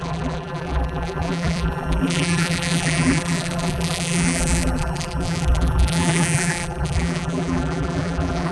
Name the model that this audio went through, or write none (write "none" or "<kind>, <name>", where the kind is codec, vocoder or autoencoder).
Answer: vocoder, BigVGAN v2